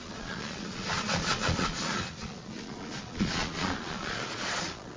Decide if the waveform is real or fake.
fake